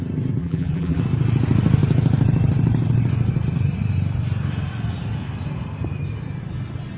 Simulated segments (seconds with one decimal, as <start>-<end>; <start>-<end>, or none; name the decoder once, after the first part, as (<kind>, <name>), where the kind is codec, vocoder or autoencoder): 0.4-1.0 (vocoder, BigVGAN v2)